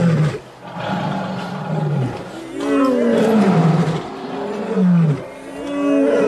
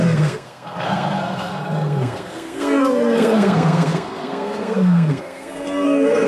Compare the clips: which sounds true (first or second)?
first